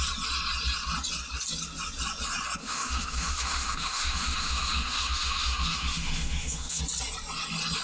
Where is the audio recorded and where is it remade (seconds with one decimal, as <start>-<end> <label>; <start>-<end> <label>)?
0.0-2.6 recorded; 2.6-6.8 remade; 6.8-7.8 recorded